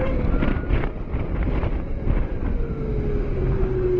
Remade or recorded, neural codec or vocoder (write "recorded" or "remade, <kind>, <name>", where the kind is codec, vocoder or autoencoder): recorded